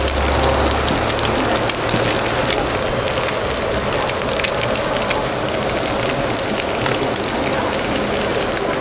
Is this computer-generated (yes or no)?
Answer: no